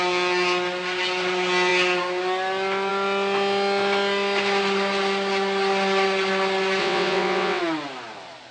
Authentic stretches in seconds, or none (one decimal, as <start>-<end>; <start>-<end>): 0.0-6.8; 7.6-8.5